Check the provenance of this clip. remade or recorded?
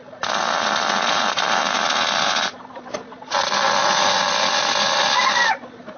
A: recorded